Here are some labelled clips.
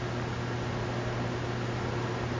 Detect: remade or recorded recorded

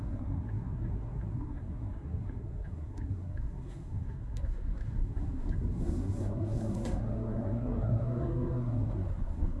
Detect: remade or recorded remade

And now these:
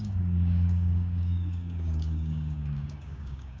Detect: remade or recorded remade